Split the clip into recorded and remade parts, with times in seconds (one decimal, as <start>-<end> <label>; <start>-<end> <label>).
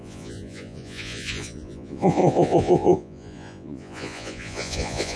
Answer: 0.0-5.2 remade